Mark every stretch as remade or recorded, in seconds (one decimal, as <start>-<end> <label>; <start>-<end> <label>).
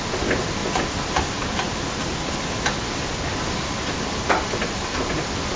0.0-5.6 recorded